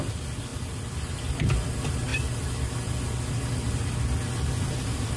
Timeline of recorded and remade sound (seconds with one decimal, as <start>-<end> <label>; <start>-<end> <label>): 0.0-0.5 recorded; 0.5-1.1 remade; 1.1-5.2 recorded